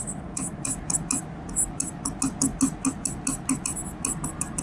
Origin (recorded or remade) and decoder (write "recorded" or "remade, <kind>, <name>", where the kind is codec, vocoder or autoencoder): recorded